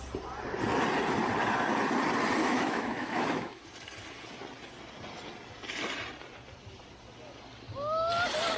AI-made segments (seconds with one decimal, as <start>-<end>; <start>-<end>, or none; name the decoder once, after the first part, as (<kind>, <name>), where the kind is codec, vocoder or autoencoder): 2.4-3.6 (autoencoder, DAC-VAE)